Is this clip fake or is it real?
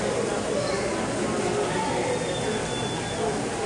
real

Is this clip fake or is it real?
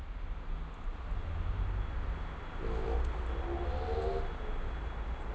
real